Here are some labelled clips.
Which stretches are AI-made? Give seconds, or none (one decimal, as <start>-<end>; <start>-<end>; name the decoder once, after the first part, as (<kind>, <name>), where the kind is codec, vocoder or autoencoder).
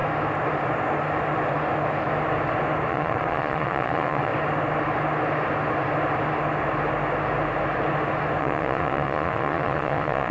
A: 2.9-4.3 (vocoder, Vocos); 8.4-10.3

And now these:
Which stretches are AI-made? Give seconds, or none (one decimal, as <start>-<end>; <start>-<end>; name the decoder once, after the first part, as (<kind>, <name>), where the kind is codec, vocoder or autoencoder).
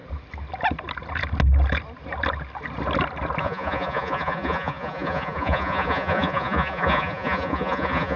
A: 3.4-8.2 (vocoder, Vocos)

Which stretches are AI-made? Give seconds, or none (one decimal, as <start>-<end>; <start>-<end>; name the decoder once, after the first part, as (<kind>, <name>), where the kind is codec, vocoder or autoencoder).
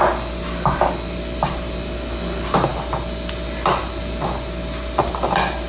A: none